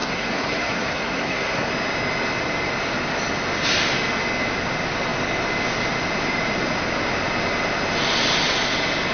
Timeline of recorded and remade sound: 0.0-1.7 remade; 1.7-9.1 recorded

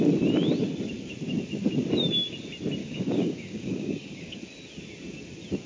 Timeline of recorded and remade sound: 0.0-2.8 recorded; 2.8-4.3 remade; 4.3-5.7 recorded

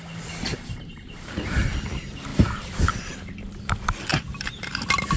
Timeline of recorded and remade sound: 0.0-0.5 recorded; 0.5-1.6 remade; 1.6-2.3 recorded; 2.3-3.5 remade; 3.5-4.1 recorded; 4.1-4.8 remade; 4.8-5.2 recorded

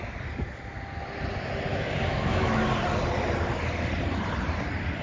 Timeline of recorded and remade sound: 0.0-1.7 recorded; 1.7-2.6 remade; 2.6-5.0 recorded

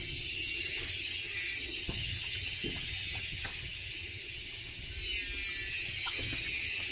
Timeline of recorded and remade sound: 0.0-4.9 remade; 4.9-5.7 recorded; 5.7-6.9 remade

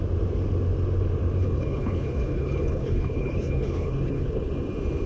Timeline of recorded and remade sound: 0.0-1.4 recorded; 1.4-4.5 remade; 4.5-5.1 recorded

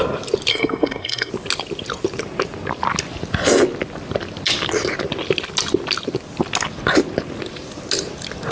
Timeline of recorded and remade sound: 0.0-0.5 recorded; 0.5-1.3 remade; 1.3-8.5 recorded